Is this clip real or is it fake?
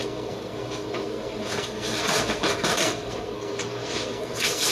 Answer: fake